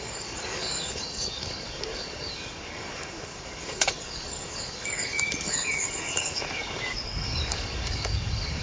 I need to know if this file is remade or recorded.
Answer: remade